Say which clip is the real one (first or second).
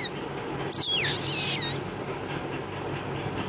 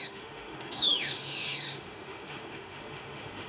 first